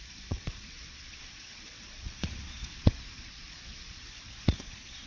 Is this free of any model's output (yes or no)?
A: no